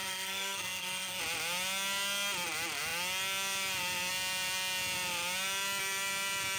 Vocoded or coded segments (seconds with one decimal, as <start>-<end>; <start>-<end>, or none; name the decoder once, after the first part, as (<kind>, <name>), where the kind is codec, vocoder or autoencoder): 0.0-1.2 (codec, SNAC)